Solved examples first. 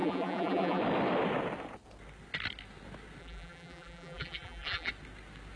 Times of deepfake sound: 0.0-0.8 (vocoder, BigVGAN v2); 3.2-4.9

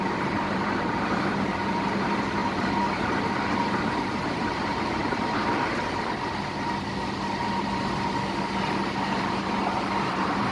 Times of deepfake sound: 0.0-5.0 (vocoder, BigVGAN v2); 10.1-10.5

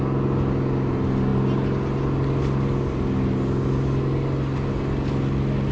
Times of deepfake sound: none

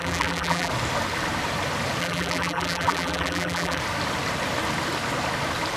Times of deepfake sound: 0.0-0.7 (vocoder, BigVGAN v2); 2.0-3.8